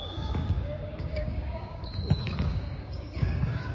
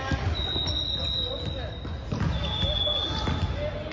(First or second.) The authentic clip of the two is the second